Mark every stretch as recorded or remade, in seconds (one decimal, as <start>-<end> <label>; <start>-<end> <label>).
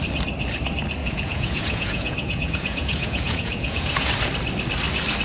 0.0-1.0 recorded; 1.0-4.1 remade; 4.1-5.2 recorded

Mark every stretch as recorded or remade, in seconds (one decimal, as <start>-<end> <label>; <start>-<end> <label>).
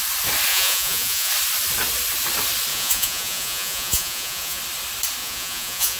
0.0-0.5 recorded; 0.5-1.3 remade; 1.3-2.7 recorded; 2.7-4.6 remade; 4.6-5.2 recorded; 5.2-6.0 remade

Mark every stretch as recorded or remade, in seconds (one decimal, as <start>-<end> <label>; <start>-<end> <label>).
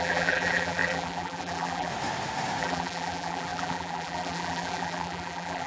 0.0-1.9 remade; 1.9-2.6 recorded; 2.6-5.7 remade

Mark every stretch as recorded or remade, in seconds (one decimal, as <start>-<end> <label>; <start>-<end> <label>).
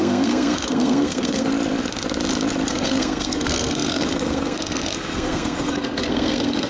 0.0-1.5 remade; 1.5-2.7 recorded; 2.7-6.7 remade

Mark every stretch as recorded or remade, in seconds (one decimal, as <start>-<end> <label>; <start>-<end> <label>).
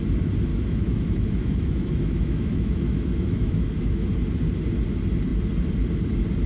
0.0-0.5 recorded; 0.5-4.1 remade; 4.1-6.5 recorded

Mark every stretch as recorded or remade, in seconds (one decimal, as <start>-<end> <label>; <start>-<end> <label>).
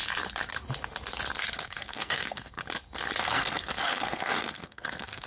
0.0-1.6 recorded; 1.6-2.6 remade; 2.6-3.2 recorded; 3.2-5.3 remade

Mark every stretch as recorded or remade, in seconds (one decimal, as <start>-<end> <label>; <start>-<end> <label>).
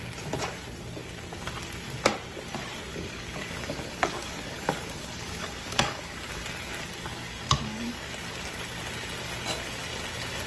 0.0-2.9 recorded; 2.9-6.4 remade; 6.4-7.1 recorded; 7.1-8.1 remade; 8.1-10.5 recorded